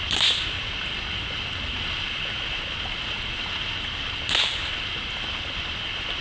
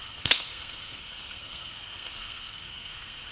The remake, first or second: second